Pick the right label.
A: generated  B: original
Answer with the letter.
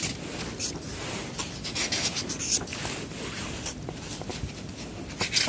B